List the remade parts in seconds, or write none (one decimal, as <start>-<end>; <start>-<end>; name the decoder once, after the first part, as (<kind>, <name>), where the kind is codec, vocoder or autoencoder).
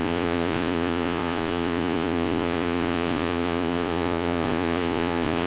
0.0-5.5 (vocoder, Vocos)